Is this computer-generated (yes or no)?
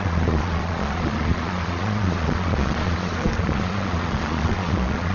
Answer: yes